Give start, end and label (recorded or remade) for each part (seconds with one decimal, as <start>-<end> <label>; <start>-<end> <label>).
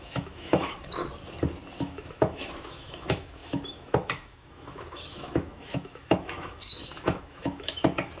0.0-1.0 remade; 1.0-1.8 recorded; 1.8-8.2 remade